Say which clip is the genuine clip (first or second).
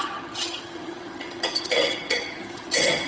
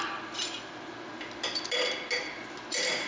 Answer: second